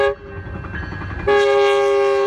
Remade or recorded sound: recorded